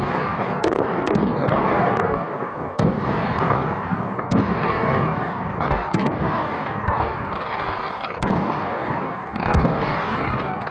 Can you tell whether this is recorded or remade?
remade